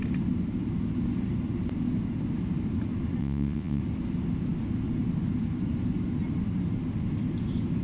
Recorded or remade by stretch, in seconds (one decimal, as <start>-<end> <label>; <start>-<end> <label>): 0.0-3.2 recorded; 3.2-3.8 remade; 3.8-7.8 recorded